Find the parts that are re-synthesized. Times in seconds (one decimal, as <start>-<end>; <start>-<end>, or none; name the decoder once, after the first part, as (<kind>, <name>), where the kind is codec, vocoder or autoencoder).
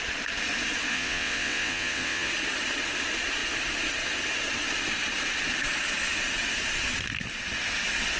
0.9-2.3 (vocoder, WaveNeXt)